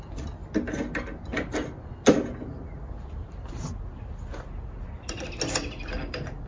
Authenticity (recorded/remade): recorded